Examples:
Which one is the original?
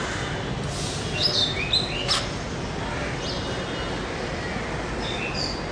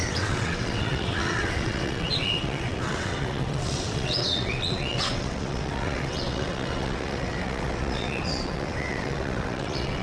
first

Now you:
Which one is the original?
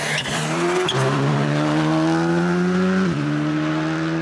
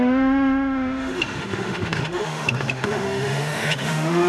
first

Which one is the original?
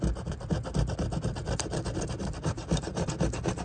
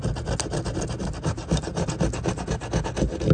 second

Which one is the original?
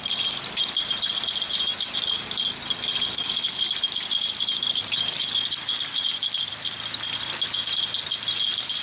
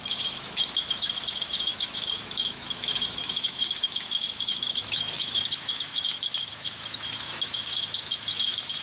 first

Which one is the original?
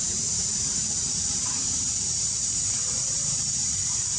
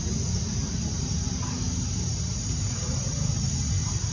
second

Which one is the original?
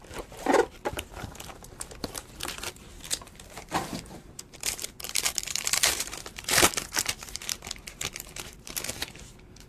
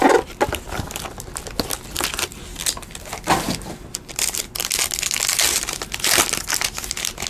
second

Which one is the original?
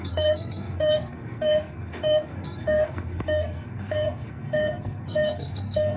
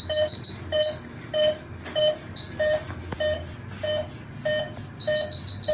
second